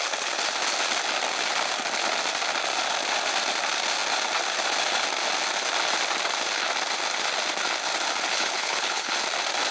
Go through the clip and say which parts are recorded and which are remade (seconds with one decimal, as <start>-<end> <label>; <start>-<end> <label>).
0.0-8.3 recorded; 8.3-9.1 remade; 9.1-9.7 recorded